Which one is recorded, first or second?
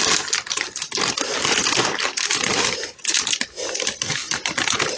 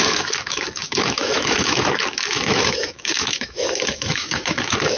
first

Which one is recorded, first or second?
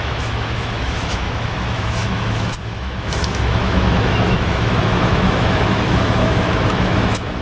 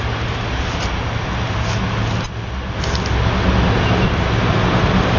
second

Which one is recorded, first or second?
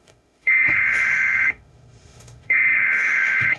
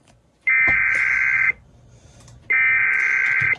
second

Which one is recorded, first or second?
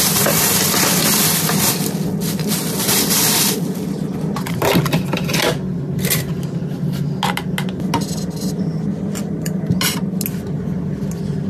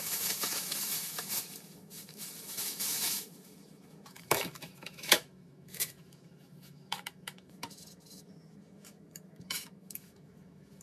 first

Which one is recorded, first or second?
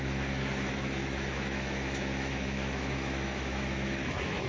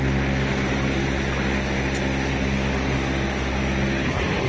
second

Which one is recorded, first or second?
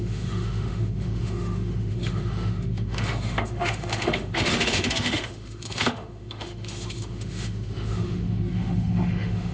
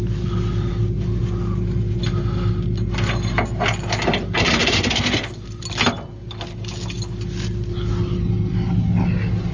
second